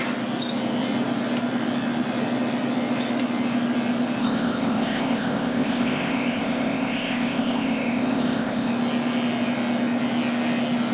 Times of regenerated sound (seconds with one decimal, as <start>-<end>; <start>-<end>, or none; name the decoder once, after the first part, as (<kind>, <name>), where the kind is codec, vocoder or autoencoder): 4.2-8.7 (codec, ZipCodec)